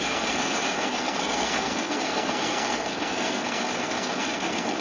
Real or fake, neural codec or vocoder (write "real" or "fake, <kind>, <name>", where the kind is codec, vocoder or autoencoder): fake, codec, SNAC